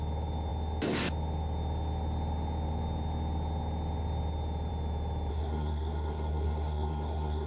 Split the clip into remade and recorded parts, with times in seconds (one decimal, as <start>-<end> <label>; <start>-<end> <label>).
0.0-5.3 recorded; 5.3-7.5 remade